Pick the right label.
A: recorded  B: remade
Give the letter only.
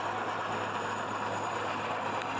A